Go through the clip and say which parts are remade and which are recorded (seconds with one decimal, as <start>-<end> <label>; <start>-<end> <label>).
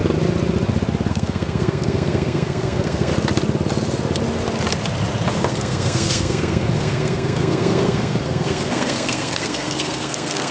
0.0-1.1 recorded; 1.1-3.1 remade; 3.1-5.3 recorded; 5.3-10.5 remade